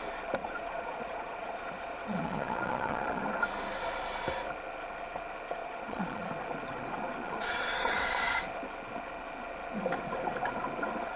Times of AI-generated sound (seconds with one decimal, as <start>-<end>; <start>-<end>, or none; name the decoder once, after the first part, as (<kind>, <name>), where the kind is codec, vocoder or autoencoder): 0.4-3.2 (vocoder, Vocos); 5.6-6.3; 7.2-8.4